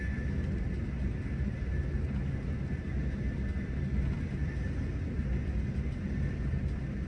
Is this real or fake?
real